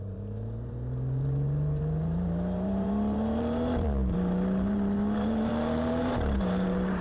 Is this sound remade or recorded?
remade